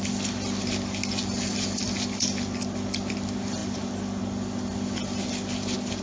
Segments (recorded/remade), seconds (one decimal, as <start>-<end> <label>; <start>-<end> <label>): 0.0-6.0 recorded